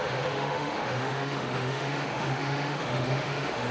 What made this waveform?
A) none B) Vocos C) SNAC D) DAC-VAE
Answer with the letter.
D